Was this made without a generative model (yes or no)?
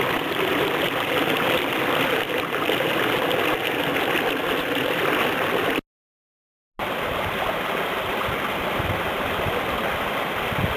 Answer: yes